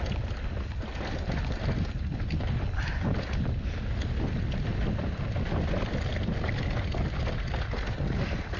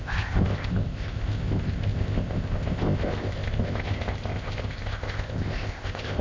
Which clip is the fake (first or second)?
second